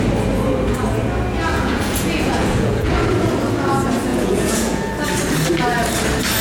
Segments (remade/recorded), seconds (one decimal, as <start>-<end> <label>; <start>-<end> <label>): 0.0-1.5 recorded; 1.5-2.9 remade; 2.9-4.1 recorded; 4.1-4.9 remade; 4.9-6.4 recorded